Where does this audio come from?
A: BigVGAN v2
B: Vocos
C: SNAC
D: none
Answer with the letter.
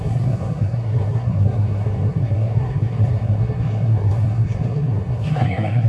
C